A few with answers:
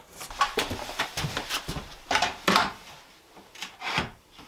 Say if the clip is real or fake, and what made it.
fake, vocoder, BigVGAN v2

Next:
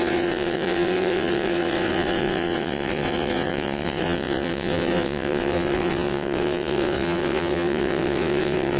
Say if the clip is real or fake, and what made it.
fake, vocoder, WaveNeXt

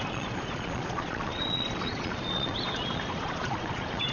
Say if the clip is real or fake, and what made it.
fake, vocoder, Vocos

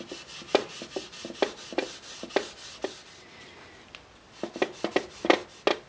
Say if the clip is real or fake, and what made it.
real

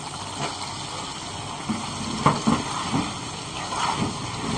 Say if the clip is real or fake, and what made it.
real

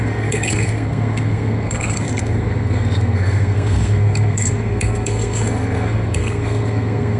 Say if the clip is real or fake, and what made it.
fake, codec, SNAC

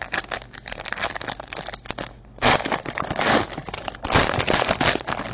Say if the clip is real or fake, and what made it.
real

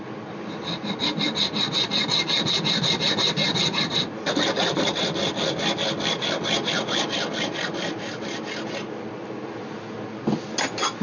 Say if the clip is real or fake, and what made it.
real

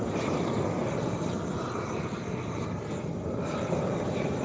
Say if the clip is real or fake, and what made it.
real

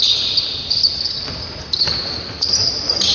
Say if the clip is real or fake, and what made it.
real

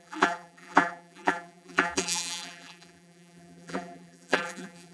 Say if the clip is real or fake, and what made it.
fake, vocoder, BigVGAN v2